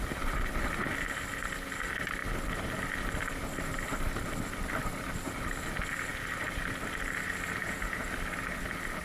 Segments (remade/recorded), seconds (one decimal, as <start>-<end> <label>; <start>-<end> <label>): 0.0-7.6 recorded; 7.6-8.1 remade; 8.1-9.0 recorded